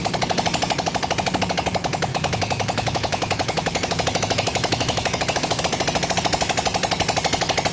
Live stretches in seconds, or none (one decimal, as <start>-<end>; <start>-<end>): 0.0-2.1; 5.6-7.7